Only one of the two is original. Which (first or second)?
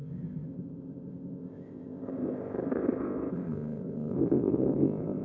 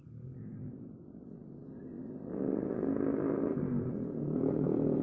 second